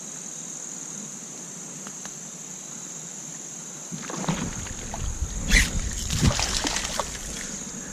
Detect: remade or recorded recorded